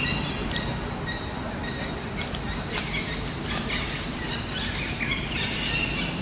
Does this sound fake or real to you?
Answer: real